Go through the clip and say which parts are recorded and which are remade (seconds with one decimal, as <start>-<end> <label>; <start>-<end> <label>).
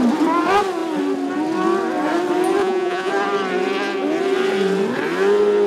0.0-2.6 recorded; 2.6-3.1 remade; 3.1-5.7 recorded